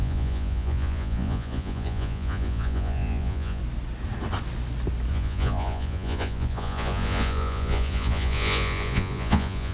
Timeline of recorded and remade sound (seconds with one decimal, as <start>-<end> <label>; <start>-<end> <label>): 0.0-3.6 remade; 3.6-5.1 recorded; 5.1-9.7 remade